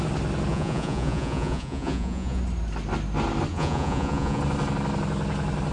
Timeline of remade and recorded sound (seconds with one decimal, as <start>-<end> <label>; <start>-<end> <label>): 0.0-0.5 recorded; 0.5-2.4 remade; 2.4-3.5 recorded; 3.5-4.4 remade; 4.4-5.7 recorded